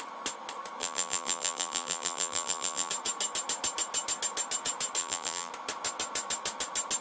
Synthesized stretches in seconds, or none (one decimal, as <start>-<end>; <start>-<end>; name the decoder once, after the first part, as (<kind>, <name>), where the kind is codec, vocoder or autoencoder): 0.8-2.9 (vocoder, BigVGAN v2); 5.0-5.5